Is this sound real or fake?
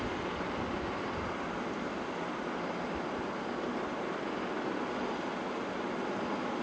real